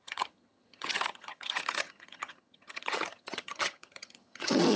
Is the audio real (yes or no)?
no